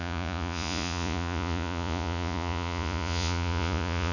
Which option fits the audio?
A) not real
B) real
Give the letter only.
A